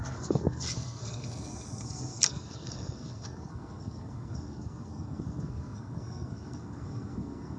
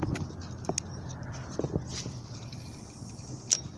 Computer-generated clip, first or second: first